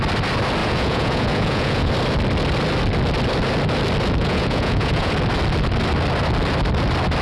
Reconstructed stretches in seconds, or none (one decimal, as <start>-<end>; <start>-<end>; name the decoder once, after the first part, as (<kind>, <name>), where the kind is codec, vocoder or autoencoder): 0.6-1.9 (vocoder, Vocos); 4.2-5.1